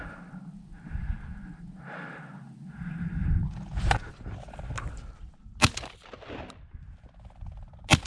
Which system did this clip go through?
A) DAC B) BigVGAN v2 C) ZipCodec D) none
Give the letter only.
D